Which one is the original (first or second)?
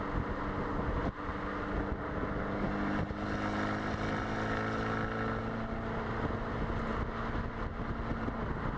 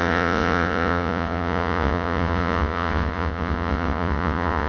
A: first